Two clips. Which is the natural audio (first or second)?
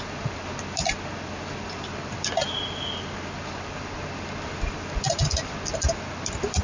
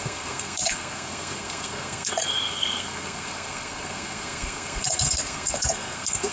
first